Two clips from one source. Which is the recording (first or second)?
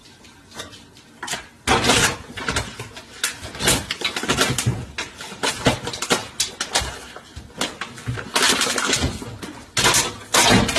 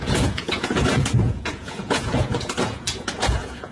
first